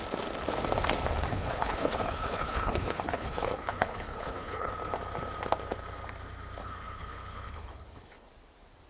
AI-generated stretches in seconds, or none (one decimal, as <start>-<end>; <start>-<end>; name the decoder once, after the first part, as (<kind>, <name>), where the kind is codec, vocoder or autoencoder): 1.3-4.7 (codec, HILCodec); 6.6-8.3